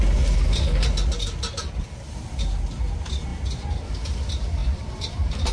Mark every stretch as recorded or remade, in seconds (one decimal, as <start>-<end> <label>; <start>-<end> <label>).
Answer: 0.0-4.6 recorded; 4.6-5.5 remade